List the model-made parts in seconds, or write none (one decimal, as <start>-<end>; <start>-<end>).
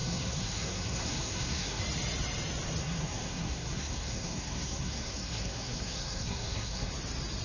0.0-1.8; 2.8-6.9